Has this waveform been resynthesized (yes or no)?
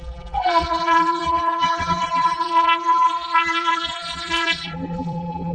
yes